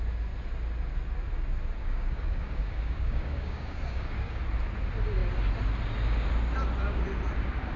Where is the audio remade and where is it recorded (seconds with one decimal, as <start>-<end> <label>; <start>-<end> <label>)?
0.0-1.8 recorded; 1.8-4.4 remade; 4.4-7.8 recorded